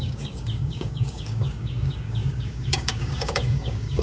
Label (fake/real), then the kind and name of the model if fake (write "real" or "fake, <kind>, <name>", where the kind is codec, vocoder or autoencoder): fake, codec, DAC